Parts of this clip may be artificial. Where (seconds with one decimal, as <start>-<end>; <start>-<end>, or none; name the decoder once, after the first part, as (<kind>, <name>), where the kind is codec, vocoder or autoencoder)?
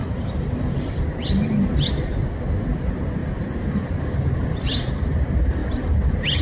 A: 0.0-1.0 (vocoder, BigVGAN v2); 3.2-4.9